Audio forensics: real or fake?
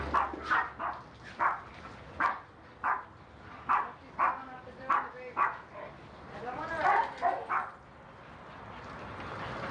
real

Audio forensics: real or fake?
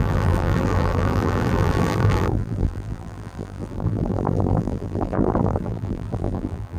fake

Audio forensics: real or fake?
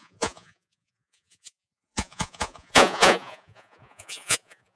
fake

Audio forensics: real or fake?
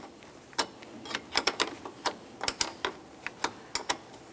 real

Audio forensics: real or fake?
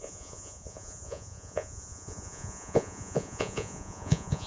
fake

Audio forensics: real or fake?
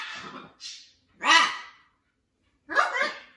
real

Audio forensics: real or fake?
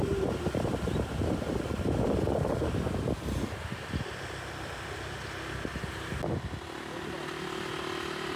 real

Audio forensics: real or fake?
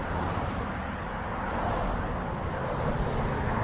real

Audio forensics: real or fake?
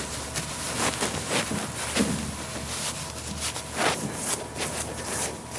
real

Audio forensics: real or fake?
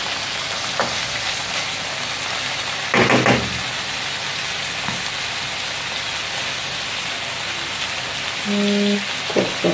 real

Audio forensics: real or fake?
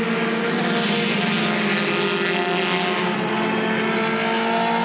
real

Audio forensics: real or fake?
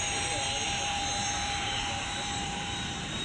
fake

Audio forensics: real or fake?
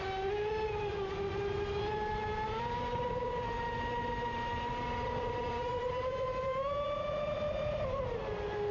real